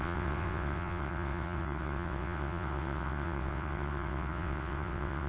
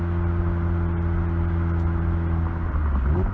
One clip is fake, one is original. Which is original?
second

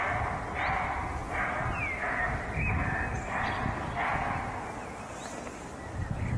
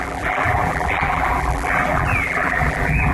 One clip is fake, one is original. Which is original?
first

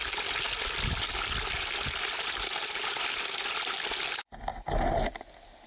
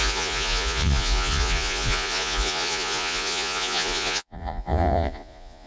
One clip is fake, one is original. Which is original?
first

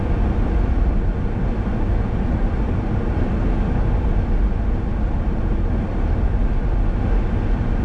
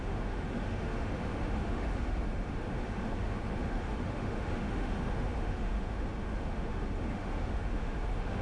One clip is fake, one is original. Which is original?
first